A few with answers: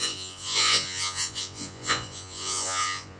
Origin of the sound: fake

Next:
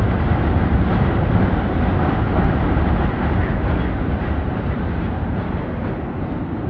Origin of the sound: real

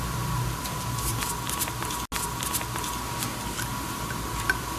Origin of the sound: real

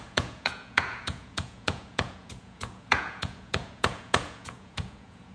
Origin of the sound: fake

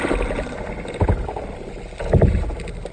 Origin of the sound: real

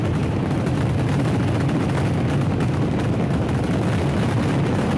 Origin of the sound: real